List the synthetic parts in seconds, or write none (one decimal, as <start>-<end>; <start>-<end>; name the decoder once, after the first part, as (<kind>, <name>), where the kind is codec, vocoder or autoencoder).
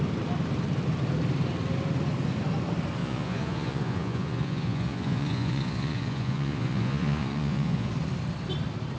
3.0-7.9 (vocoder, Vocos)